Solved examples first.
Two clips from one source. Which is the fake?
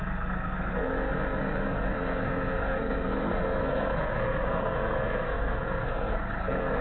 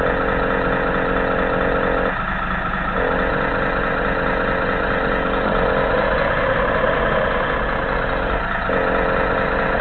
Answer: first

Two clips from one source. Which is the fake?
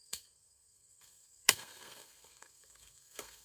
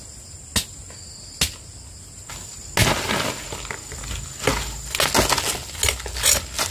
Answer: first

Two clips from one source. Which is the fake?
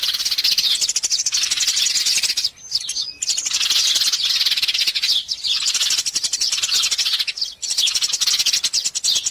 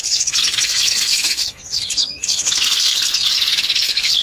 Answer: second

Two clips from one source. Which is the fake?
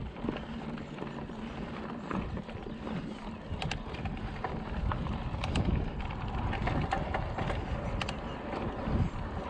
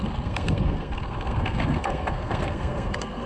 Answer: second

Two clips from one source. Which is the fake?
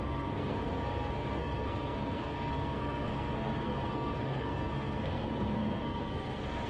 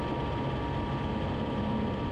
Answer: first